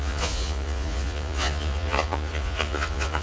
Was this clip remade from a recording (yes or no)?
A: yes